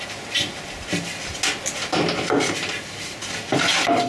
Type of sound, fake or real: real